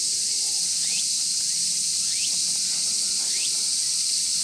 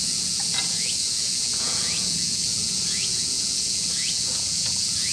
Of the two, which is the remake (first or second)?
second